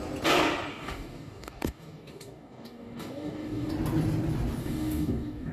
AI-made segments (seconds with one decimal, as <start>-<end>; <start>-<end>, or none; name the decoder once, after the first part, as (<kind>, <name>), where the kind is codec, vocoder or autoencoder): 0.7-3.7 (codec, DAC); 4.6-5.5

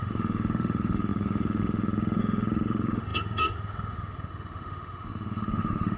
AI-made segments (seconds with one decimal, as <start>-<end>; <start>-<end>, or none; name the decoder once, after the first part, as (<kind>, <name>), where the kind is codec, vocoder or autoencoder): 0.0-6.0 (autoencoder, DAC-VAE)

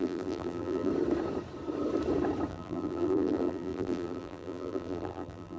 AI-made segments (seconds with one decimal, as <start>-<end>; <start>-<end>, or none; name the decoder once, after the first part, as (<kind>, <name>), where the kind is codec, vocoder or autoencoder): 0.0-0.9 (vocoder, BigVGAN v2); 2.5-5.6